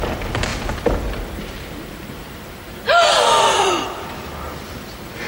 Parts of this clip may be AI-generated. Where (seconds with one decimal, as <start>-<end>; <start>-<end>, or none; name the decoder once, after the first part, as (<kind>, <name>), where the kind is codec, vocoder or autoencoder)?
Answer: 0.5-3.7 (vocoder, BigVGAN v2)